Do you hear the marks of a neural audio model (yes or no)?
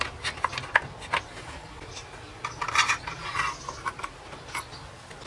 no